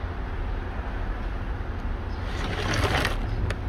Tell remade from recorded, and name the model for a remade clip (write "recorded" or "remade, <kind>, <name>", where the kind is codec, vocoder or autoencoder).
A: recorded